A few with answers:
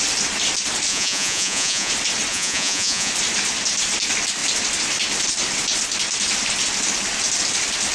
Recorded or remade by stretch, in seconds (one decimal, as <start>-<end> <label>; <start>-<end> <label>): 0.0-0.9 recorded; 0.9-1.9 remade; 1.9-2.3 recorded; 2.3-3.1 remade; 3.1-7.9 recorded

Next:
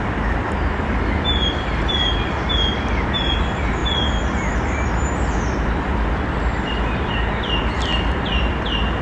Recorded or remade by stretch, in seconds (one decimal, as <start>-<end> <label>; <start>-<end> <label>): 0.0-9.0 recorded

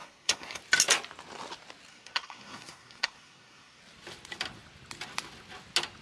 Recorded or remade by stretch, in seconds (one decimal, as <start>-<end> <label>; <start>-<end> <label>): 0.0-0.6 remade; 0.6-1.9 recorded; 1.9-3.8 remade; 3.8-6.0 recorded

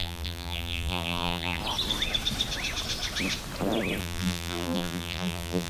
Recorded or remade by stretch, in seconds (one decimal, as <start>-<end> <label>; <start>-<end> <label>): 0.0-1.6 remade; 1.6-4.0 recorded; 4.0-5.7 remade